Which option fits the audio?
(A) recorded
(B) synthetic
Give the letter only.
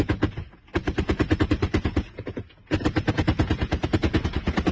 B